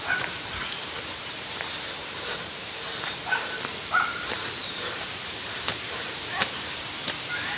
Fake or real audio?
fake